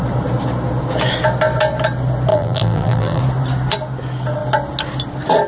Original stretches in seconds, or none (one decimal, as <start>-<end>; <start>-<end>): 0.0-2.3; 3.2-5.5